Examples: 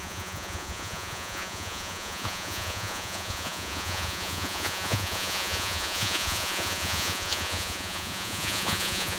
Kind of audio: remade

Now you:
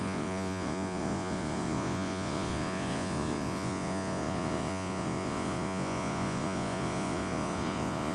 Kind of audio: remade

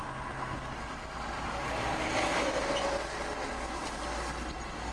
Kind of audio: recorded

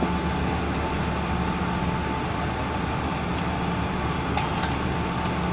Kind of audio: recorded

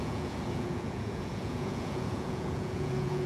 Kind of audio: remade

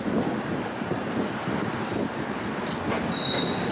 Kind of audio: recorded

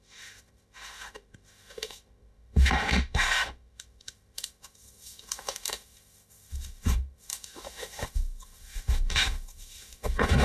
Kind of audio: remade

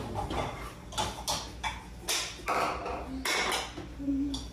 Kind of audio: recorded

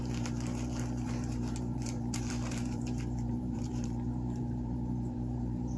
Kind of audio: remade